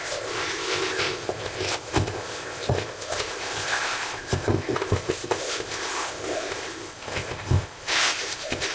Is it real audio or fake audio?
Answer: fake